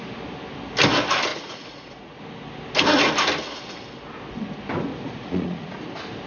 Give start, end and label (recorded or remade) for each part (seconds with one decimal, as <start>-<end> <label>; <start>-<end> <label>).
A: 0.0-1.3 recorded; 1.3-2.2 remade; 2.2-4.9 recorded; 4.9-5.8 remade; 5.8-6.3 recorded